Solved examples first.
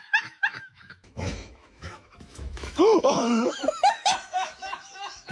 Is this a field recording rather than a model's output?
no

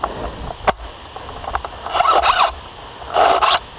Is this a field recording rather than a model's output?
yes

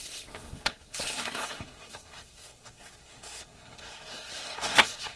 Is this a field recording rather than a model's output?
no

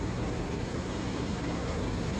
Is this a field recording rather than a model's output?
no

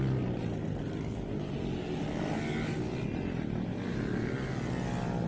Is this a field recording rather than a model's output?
yes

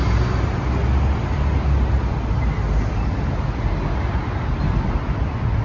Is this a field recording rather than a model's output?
yes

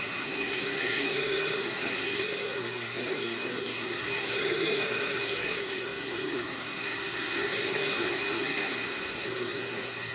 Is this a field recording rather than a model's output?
no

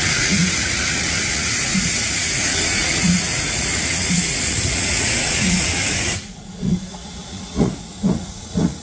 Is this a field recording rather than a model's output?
no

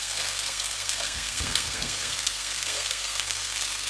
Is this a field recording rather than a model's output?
no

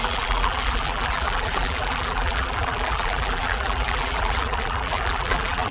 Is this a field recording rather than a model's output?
no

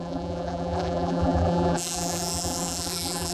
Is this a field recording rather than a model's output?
no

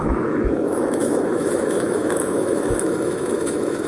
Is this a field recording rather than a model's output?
no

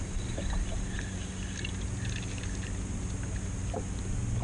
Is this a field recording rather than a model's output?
yes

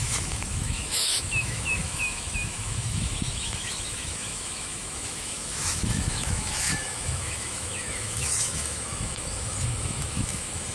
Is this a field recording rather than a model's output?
no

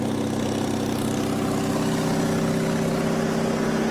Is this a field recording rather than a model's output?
yes